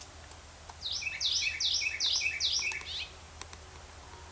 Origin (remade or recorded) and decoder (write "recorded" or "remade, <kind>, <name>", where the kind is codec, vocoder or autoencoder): recorded